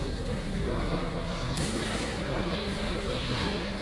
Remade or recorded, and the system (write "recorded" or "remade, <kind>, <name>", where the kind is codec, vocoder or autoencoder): remade, codec, SNAC